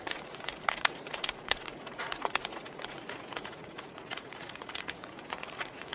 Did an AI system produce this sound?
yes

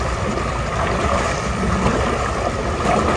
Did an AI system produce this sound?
no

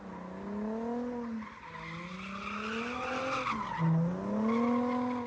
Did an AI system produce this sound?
no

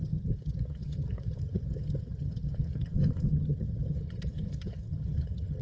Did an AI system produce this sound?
yes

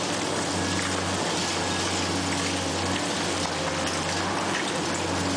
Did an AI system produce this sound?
no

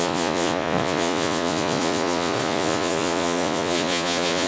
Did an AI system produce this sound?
yes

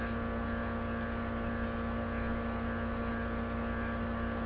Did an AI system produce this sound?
no